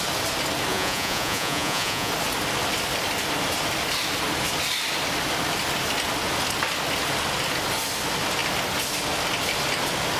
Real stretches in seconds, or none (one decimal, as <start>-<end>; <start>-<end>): 0.0-0.7; 2.1-10.2